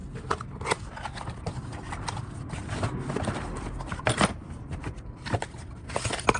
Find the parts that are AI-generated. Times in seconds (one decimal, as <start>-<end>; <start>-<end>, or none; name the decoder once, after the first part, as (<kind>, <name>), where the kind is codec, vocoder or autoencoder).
3.1-6.4 (vocoder, BigVGAN v2)